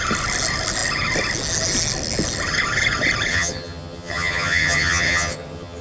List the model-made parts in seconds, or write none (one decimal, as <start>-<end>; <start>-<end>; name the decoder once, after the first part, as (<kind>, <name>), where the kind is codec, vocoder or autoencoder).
3.3-5.8 (vocoder, HiFi-GAN)